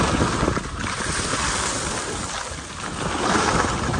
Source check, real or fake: real